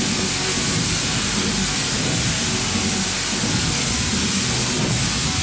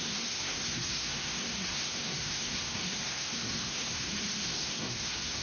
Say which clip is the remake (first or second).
second